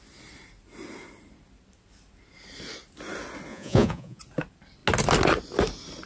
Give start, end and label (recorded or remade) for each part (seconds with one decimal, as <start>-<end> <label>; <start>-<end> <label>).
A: 0.0-3.5 recorded; 3.5-4.2 remade; 4.2-6.1 recorded